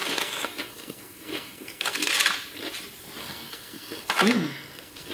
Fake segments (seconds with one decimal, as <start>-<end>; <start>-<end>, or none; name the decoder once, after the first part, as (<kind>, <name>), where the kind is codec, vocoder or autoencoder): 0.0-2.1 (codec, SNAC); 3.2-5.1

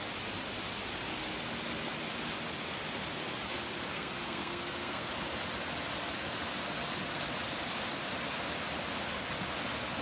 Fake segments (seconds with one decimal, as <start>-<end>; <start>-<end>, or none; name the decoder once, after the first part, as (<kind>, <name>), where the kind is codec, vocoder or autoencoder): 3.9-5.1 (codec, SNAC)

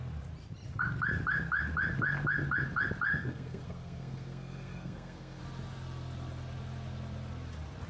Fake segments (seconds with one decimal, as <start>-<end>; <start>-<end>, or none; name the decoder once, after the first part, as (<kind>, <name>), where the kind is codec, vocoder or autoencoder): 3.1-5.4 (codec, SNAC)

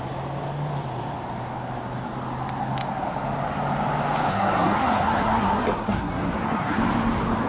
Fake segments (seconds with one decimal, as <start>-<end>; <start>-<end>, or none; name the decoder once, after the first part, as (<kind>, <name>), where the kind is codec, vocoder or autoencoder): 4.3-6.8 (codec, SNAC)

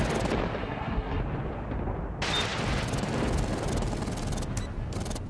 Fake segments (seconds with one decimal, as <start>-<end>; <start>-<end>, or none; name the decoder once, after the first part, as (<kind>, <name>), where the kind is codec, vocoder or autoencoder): 0.6-1.2 (codec, SNAC)

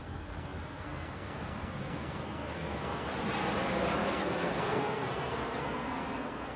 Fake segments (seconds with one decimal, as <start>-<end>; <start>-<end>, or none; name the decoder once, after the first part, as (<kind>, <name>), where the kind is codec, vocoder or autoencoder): 0.0-3.1 (codec, SNAC); 4.0-6.6

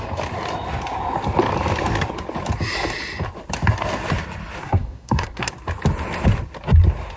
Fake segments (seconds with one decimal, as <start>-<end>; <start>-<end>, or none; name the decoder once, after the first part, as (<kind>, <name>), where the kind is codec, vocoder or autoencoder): 4.6-5.5 (codec, SNAC)